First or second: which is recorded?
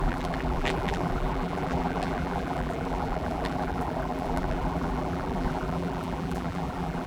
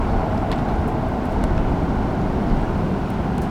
second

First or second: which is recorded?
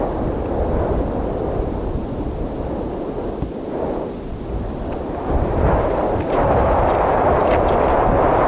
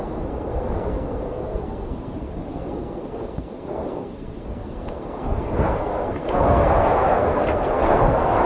first